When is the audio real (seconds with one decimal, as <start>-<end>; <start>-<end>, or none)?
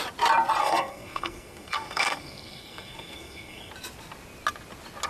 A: 0.0-0.6; 3.7-5.1